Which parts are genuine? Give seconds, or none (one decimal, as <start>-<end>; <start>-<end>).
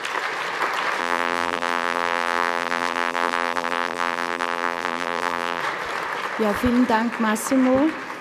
0.0-1.0; 5.6-8.2